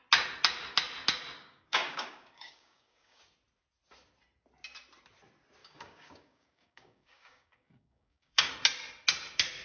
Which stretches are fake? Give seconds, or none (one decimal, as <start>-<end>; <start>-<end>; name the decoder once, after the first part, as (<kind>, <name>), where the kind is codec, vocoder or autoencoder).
1.4-3.2 (codec, DAC); 5.6-8.5